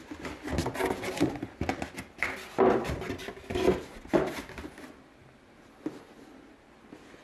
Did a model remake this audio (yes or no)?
no